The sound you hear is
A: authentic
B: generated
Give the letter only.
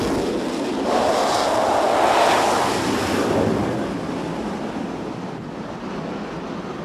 A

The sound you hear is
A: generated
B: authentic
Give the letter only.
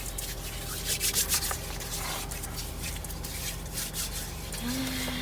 B